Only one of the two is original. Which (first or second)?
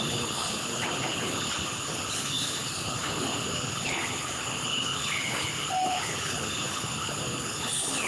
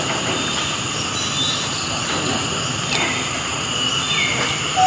second